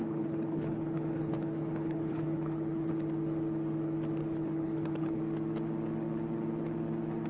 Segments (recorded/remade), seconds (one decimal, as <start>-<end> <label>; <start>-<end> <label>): 0.0-2.9 remade; 2.9-4.2 recorded; 4.2-5.2 remade; 5.2-7.3 recorded